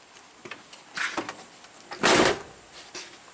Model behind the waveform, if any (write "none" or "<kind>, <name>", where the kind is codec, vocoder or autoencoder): none